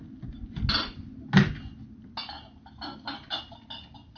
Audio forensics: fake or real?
real